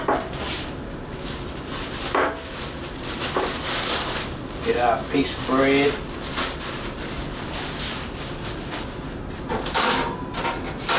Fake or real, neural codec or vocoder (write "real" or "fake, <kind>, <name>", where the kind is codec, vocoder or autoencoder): real